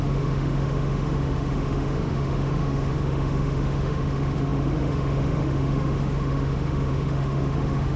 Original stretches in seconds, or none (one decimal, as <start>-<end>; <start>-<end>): none